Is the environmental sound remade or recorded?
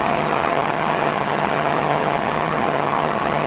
remade